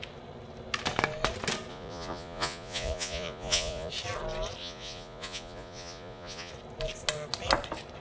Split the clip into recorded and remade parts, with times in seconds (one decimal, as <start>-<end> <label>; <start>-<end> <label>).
0.0-1.7 recorded; 1.7-3.9 remade; 3.9-4.6 recorded; 4.6-6.5 remade; 6.5-8.0 recorded